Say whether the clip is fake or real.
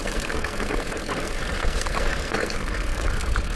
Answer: fake